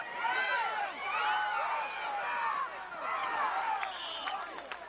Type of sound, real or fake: real